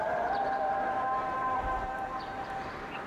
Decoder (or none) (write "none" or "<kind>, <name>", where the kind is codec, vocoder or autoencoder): vocoder, BigVGAN v2